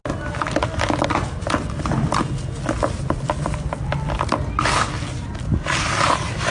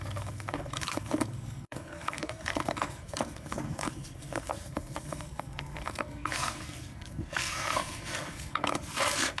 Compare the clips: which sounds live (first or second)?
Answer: first